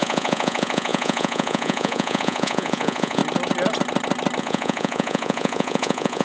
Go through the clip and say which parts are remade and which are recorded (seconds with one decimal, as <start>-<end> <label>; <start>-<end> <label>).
0.0-3.2 remade; 3.2-4.4 recorded; 4.4-6.2 remade